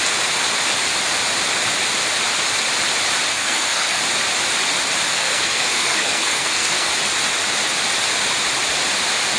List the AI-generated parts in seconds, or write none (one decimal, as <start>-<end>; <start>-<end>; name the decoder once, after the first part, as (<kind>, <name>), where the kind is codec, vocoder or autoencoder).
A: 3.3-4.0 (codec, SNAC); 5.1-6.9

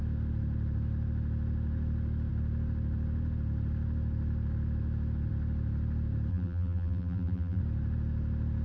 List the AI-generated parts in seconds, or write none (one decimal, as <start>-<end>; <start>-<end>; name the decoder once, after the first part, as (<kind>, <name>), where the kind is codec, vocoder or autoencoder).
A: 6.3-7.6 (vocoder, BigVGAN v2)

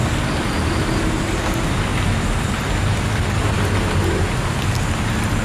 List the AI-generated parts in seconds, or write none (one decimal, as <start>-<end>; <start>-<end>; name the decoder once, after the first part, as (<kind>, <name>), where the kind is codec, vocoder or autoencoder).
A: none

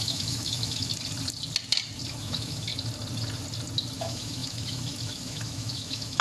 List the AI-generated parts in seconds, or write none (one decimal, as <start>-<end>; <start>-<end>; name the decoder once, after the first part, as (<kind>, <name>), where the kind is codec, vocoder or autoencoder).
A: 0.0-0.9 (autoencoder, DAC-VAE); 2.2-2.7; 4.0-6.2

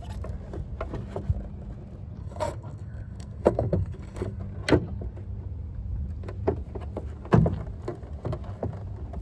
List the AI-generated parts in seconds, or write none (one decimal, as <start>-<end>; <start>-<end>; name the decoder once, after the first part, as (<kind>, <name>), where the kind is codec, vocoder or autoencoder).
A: 2.2-4.4 (codec, SNAC)